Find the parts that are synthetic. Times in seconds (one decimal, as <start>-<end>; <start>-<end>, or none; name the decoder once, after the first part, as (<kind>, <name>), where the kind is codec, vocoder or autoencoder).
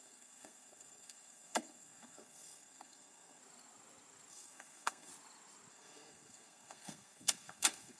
0.0-3.4 (codec, SNAC); 4.3-5.1; 5.7-8.0